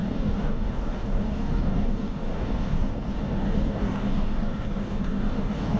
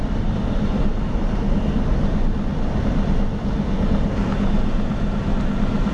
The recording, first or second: second